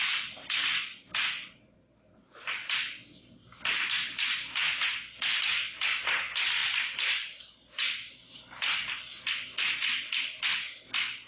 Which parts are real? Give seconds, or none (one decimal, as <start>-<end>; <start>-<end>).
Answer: 0.0-11.3